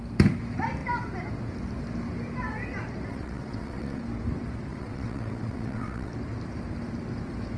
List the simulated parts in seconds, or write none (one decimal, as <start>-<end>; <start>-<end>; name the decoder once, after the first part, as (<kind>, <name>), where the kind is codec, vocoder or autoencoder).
3.1-4.0 (vocoder, WaveNeXt); 4.7-6.1

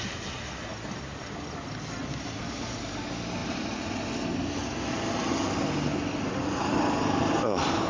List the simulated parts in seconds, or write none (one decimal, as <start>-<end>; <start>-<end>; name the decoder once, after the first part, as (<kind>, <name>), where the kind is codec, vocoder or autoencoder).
none

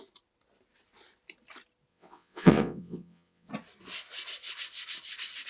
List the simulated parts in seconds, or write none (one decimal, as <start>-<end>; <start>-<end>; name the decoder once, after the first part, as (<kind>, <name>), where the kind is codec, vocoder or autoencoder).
1.9-3.5 (vocoder, WaveNeXt)

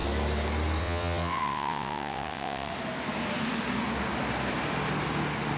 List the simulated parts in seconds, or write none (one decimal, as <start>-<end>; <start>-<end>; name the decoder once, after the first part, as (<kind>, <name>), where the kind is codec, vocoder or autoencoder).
0.8-2.7 (vocoder, WaveNeXt)

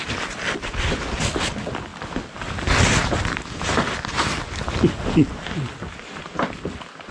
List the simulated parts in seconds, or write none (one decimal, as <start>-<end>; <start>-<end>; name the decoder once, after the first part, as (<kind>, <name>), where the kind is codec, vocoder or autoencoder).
none

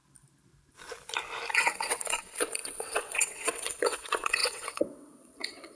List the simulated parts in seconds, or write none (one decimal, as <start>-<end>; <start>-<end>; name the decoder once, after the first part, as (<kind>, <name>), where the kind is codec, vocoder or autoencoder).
1.5-5.7 (vocoder, WaveNeXt)

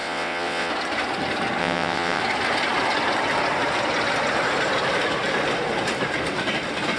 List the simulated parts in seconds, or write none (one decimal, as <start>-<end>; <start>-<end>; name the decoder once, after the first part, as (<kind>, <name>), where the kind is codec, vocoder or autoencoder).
0.0-0.7 (vocoder, WaveNeXt); 1.6-2.2

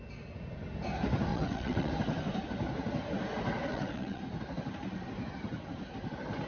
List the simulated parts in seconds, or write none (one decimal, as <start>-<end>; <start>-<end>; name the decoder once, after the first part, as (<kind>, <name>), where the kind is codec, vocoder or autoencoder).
1.3-1.9 (vocoder, WaveNeXt); 3.7-4.2